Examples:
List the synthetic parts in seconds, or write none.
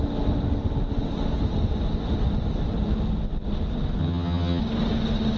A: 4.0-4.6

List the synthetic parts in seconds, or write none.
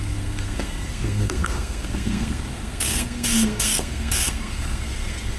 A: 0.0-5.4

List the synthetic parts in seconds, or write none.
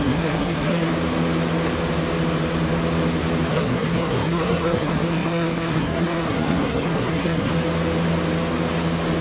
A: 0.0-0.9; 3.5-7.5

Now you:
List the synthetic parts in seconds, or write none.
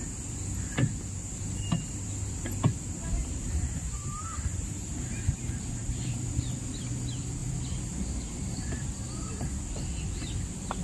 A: 3.2-6.5; 7.4-9.6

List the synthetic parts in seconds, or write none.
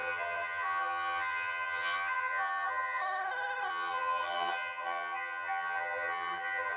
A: 0.0-3.0; 3.7-6.8